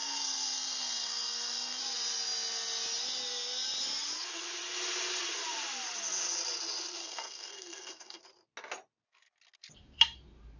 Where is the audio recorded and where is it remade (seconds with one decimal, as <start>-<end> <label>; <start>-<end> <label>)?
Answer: 0.0-1.8 remade; 1.8-7.0 recorded; 7.0-8.2 remade; 8.2-10.6 recorded